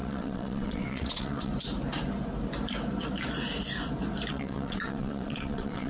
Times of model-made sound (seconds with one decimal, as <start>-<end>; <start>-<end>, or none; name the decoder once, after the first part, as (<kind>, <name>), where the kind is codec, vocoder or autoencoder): 0.0-1.5 (vocoder, WaveNeXt); 4.3-5.9